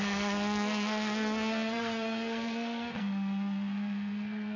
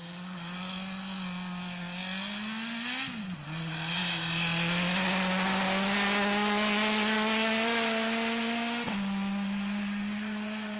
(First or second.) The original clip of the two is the second